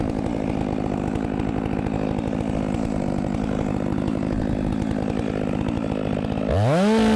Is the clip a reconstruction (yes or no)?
no